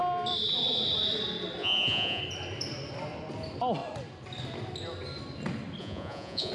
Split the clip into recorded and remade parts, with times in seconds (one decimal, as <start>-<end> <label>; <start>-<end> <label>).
0.0-1.6 recorded; 1.6-2.2 remade; 2.2-5.8 recorded; 5.8-6.5 remade